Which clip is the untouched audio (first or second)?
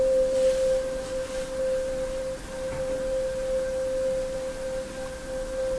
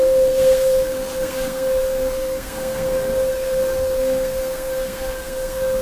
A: first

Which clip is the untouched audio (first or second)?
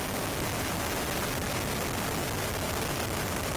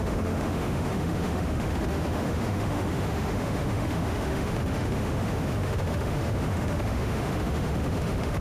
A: first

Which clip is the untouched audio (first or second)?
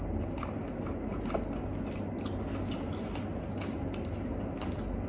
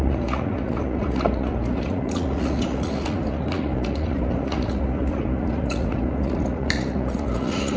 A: first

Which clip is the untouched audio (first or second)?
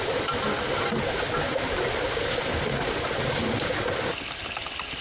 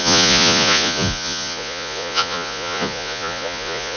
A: first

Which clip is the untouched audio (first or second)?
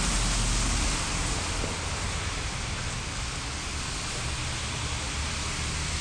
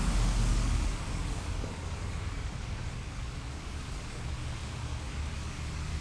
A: first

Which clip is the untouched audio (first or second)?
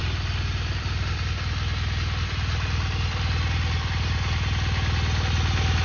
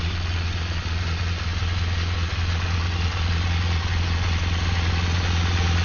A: first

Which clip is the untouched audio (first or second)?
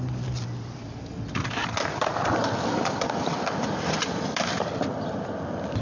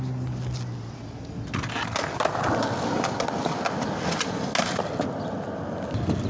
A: second